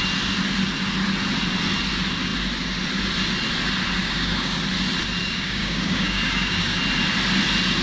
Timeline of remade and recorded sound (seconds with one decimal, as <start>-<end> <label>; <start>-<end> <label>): 0.0-4.0 recorded; 4.0-4.6 remade; 4.6-5.2 recorded; 5.2-6.8 remade; 6.8-7.8 recorded